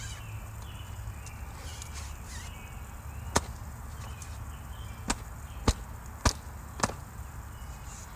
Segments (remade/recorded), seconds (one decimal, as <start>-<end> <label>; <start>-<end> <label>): 0.0-8.2 recorded